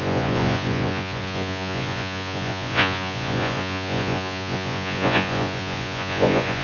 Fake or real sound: fake